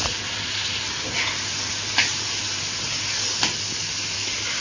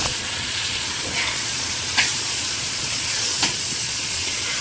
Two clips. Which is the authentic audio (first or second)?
first